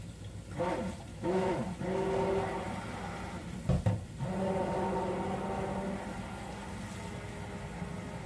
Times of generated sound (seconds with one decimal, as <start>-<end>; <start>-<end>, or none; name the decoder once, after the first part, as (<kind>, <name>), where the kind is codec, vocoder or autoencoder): 1.1-1.6 (autoencoder, DAC-VAE)